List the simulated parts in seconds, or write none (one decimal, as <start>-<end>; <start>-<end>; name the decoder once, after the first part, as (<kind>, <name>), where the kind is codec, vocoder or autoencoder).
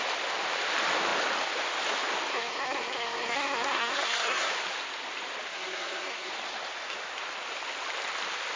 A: 2.3-4.5 (codec, SNAC); 5.5-6.3